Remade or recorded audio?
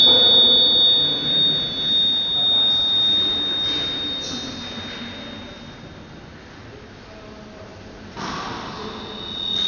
recorded